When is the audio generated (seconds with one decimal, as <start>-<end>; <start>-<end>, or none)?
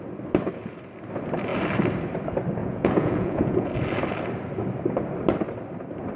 2.6-3.7